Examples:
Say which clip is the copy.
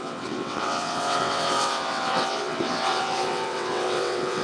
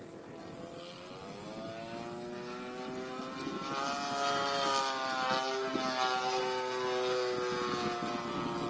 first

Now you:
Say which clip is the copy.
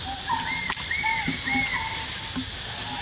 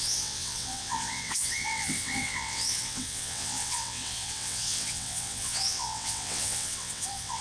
second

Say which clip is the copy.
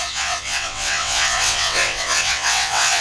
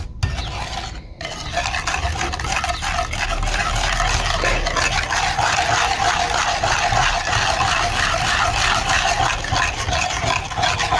first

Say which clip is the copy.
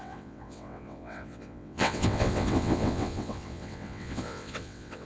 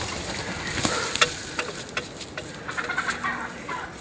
first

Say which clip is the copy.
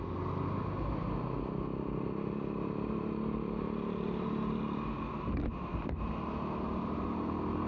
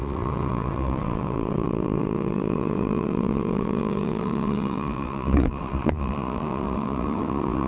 second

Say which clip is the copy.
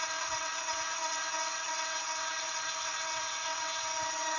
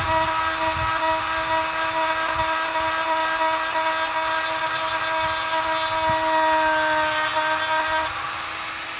first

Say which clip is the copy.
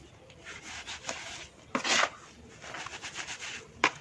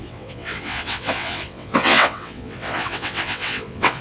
second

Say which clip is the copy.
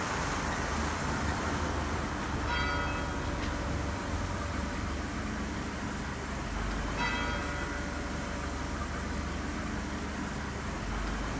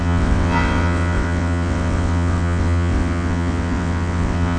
second